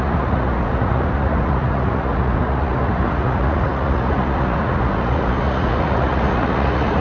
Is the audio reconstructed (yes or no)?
yes